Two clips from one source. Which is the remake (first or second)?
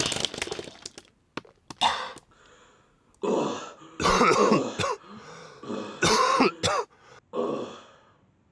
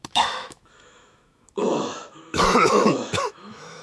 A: second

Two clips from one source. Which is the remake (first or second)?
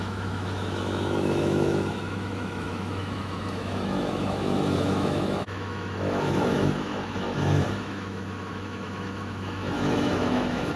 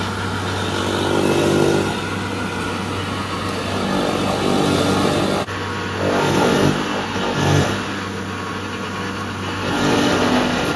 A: first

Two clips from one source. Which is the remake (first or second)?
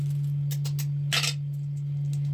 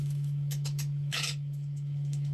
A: second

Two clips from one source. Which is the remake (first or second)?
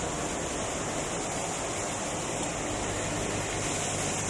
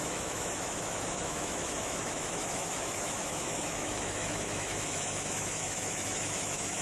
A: second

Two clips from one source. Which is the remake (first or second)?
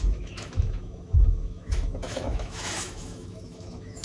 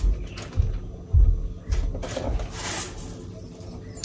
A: first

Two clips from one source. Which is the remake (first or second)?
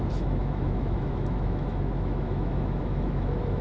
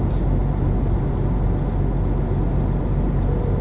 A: first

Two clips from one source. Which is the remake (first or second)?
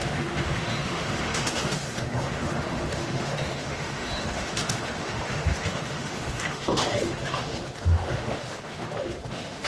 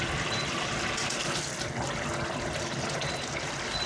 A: first